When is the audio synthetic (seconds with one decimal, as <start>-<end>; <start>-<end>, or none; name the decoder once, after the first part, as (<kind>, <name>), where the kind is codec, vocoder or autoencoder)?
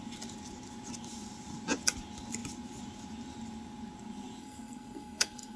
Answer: 4.4-5.6 (codec, SNAC)